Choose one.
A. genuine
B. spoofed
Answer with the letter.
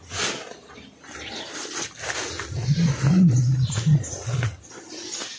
A